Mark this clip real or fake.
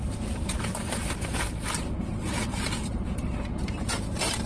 fake